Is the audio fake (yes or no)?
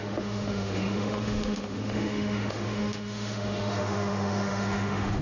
yes